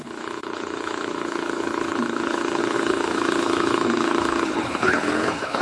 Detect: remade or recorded remade